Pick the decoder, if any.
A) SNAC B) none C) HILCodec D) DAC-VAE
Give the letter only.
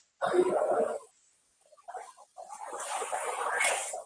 B